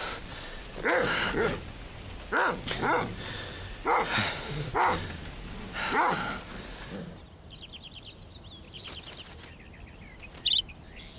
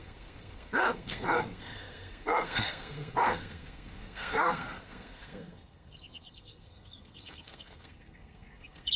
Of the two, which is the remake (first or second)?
second